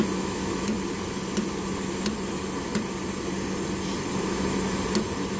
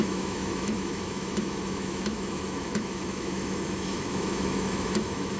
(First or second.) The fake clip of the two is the second